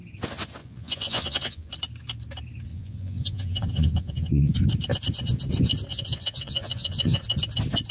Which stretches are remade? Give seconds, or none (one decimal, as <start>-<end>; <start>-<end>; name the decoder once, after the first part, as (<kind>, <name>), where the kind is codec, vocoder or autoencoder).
0.6-1.7 (vocoder, Vocos); 2.7-4.5; 5.9-7.2